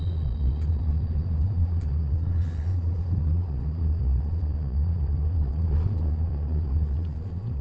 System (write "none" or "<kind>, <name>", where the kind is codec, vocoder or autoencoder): vocoder, Vocos